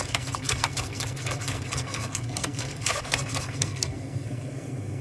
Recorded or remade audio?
remade